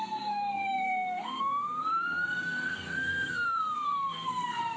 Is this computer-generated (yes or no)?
yes